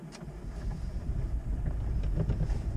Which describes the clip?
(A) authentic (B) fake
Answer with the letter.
A